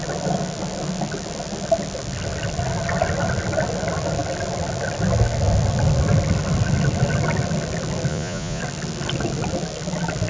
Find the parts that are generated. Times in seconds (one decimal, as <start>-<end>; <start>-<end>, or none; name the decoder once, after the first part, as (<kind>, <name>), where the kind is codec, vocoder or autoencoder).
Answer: 8.1-8.6 (vocoder, Vocos)